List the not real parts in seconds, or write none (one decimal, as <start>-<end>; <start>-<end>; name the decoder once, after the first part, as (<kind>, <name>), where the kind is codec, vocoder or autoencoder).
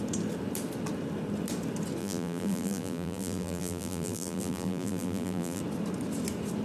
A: 2.0-5.6 (vocoder, BigVGAN v2)